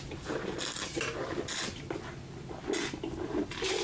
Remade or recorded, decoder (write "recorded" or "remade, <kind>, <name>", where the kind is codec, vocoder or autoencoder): recorded